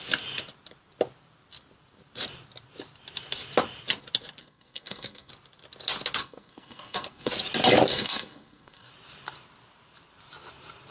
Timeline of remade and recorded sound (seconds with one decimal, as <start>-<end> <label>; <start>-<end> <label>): 0.0-4.4 recorded; 4.4-5.3 remade; 5.3-6.2 recorded; 6.2-7.3 remade; 7.3-7.9 recorded; 7.9-8.9 remade; 8.9-10.9 recorded